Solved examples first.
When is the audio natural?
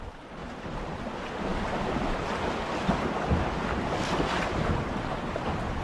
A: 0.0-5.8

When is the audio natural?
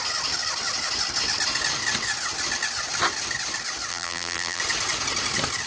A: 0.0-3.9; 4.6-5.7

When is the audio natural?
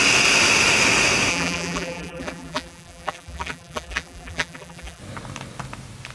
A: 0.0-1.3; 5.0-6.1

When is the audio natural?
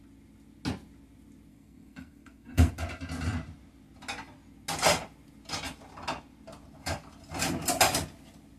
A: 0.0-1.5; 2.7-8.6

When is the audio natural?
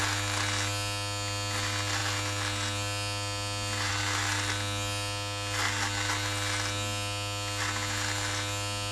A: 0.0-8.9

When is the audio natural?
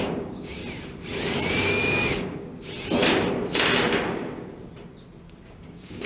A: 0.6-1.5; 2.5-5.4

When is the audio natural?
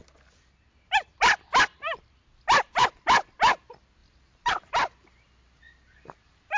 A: 0.0-4.0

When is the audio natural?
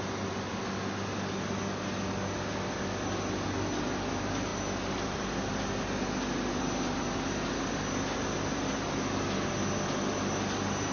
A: 0.0-10.9